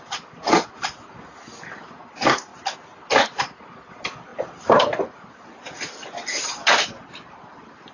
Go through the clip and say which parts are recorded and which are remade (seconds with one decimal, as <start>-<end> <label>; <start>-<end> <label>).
0.0-7.9 recorded